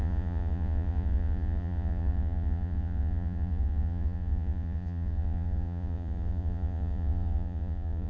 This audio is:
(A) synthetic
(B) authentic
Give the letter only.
A